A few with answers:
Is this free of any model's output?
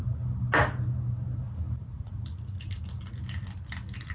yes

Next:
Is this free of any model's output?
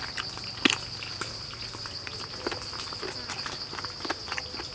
yes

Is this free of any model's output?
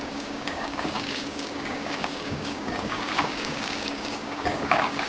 no